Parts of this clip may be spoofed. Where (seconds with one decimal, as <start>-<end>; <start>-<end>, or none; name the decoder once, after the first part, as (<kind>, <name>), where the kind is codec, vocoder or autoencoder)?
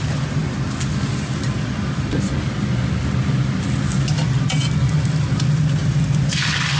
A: none